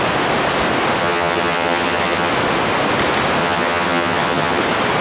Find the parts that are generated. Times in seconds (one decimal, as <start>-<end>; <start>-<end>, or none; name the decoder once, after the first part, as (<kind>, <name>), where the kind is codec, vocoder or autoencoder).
1.0-2.3 (vocoder, HiFi-GAN); 3.4-4.6